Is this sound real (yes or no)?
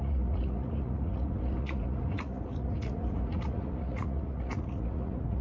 no